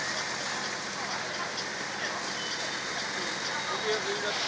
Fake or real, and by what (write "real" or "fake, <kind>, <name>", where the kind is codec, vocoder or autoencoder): real